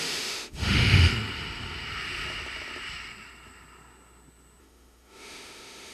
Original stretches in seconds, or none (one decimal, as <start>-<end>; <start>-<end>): 1.1-4.6